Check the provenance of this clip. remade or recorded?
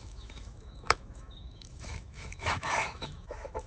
remade